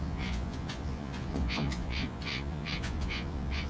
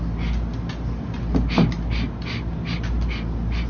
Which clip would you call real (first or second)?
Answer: second